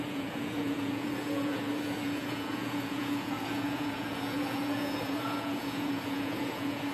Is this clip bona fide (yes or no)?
no